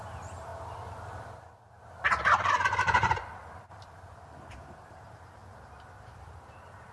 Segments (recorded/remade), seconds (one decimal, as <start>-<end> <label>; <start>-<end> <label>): 0.0-0.5 remade; 0.5-2.8 recorded; 2.8-5.4 remade; 5.4-6.0 recorded; 6.0-6.9 remade